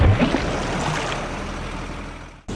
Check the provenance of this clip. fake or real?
real